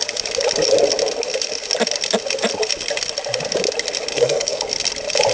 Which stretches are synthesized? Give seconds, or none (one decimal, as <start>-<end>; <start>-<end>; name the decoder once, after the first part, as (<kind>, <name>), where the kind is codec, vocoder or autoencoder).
4.1-4.6 (codec, SNAC)